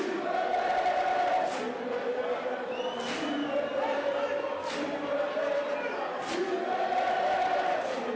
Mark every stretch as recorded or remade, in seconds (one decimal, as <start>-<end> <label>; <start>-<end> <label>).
0.0-8.2 recorded